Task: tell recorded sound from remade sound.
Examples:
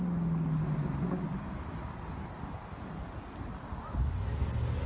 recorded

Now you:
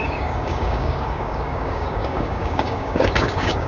remade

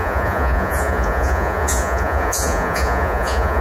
remade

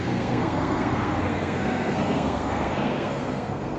remade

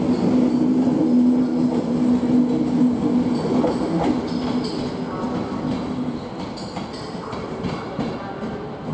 recorded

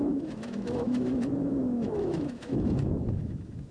remade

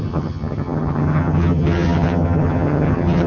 remade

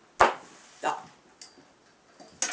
recorded